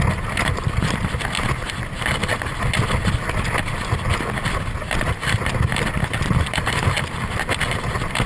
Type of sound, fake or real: real